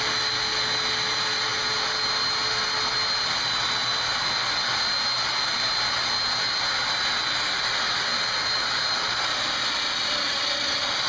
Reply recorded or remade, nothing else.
recorded